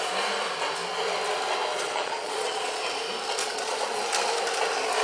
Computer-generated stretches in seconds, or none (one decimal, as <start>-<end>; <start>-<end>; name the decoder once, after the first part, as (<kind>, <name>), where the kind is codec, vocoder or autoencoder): 1.7-2.8 (vocoder, Vocos); 3.4-4.0